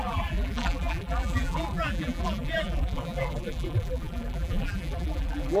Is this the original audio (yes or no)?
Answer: no